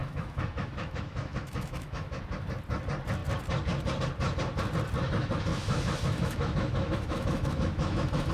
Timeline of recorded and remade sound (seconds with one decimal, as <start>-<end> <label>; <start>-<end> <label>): 0.0-2.2 remade; 2.2-5.5 recorded; 5.5-8.3 remade